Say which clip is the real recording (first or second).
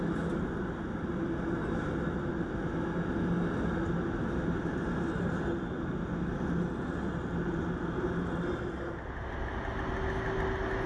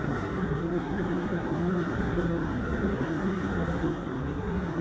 first